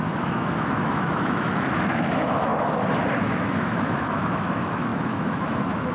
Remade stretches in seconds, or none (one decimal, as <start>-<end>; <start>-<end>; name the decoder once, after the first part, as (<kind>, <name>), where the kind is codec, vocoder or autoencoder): 0.0-2.5 (autoencoder, DAC-VAE); 3.2-5.9